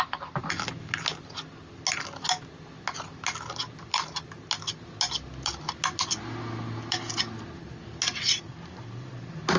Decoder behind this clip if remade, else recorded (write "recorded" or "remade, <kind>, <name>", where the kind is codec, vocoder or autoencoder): recorded